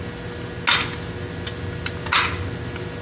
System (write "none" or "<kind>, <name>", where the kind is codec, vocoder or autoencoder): none